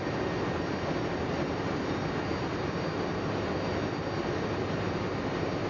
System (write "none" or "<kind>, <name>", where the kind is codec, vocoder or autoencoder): none